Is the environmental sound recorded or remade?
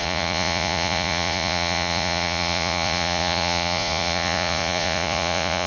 remade